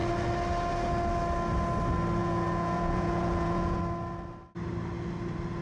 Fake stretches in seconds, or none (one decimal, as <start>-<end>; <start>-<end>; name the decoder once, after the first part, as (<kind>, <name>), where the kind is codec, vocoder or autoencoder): 2.2-3.8 (vocoder, Vocos)